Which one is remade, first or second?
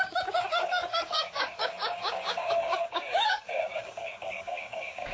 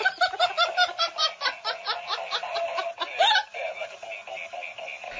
first